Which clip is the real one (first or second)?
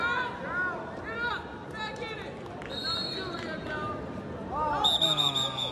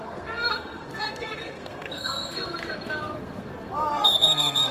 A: first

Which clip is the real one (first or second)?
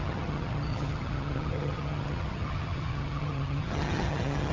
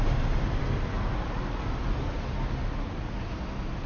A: second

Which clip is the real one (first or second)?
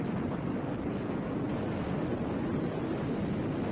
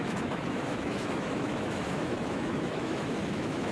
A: first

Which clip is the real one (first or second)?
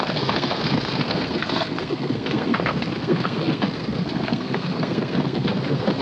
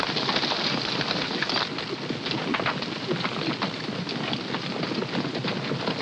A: second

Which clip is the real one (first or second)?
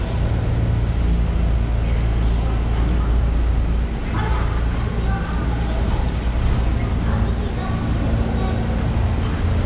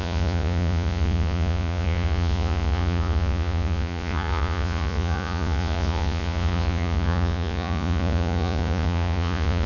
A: first